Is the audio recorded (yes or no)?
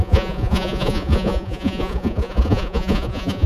no